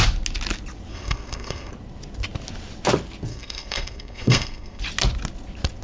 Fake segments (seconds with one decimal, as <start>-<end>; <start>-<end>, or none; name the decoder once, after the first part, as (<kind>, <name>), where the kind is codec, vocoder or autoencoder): 0.9-1.7 (codec, SNAC); 3.3-4.8